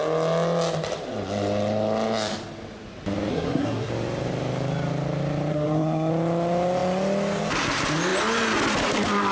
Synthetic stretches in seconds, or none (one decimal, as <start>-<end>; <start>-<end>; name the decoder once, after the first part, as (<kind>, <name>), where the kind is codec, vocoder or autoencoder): 3.3-3.9 (codec, SNAC); 5.5-6.1